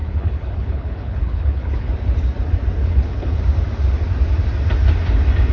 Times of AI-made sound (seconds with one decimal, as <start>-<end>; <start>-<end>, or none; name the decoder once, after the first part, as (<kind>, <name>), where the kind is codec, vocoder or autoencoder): 0.0-1.9 (codec, HILCodec); 2.8-3.4